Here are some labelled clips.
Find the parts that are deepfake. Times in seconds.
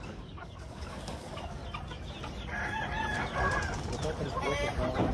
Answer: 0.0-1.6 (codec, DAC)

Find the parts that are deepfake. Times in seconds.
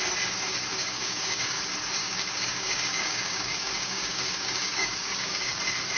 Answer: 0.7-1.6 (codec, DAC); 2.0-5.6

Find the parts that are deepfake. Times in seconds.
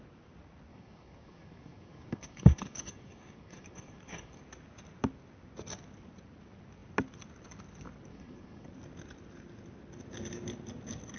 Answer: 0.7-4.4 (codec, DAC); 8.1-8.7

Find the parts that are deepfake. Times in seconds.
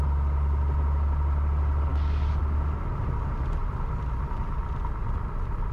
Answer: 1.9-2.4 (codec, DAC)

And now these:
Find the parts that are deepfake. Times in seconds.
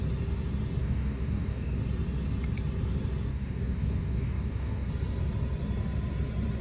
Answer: 0.8-1.8 (codec, DAC); 3.3-4.9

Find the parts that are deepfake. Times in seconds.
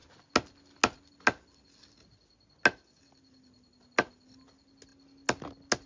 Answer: none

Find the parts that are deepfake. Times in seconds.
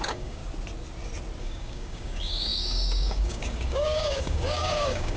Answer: 0.0-0.4 (codec, DAC); 1.4-5.2